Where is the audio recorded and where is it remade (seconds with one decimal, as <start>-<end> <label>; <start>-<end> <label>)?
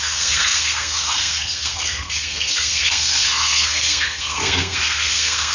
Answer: 0.0-5.5 remade